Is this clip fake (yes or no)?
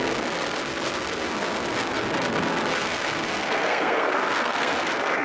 yes